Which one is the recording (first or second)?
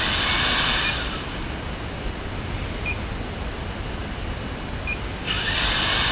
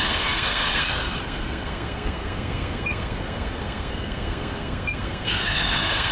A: first